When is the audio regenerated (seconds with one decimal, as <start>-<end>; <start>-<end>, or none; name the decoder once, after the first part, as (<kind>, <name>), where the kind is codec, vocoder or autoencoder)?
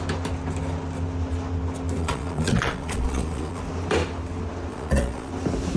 2.0-3.6 (vocoder, Vocos); 4.7-5.3